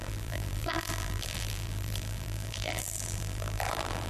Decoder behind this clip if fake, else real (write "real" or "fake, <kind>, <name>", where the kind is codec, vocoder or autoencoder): fake, vocoder, BigVGAN v2